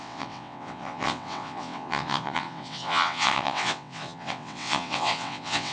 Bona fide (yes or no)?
no